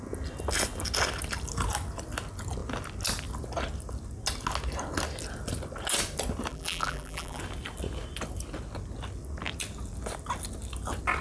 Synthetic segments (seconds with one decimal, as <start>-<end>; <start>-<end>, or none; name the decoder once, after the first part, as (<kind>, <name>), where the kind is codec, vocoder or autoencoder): 6.5-7.4 (vocoder, BigVGAN v2)